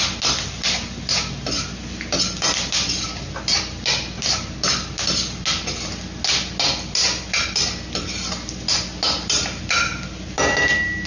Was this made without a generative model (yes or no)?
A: yes